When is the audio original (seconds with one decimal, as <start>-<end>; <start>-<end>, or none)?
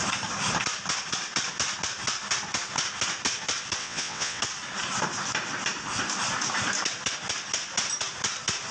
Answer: 0.0-3.8; 4.4-8.7